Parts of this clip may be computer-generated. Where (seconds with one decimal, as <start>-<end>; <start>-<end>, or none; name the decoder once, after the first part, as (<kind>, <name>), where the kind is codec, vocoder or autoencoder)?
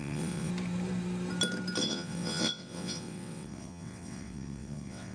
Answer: 0.0-0.5 (vocoder, WaveNeXt); 1.8-5.1